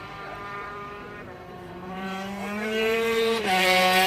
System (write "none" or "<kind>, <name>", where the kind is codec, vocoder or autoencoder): vocoder, BigVGAN v2